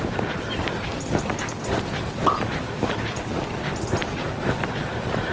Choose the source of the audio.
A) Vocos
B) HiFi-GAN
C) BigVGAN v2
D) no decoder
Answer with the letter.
D